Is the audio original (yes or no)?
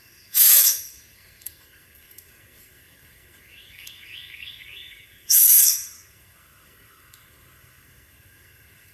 no